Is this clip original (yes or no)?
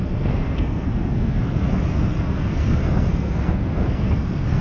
no